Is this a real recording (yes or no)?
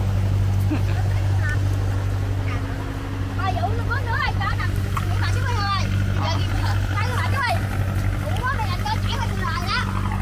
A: yes